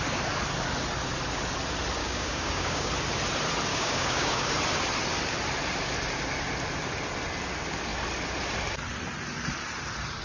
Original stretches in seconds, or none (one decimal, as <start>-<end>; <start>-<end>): 0.0-2.0; 2.9-3.7; 4.5-10.2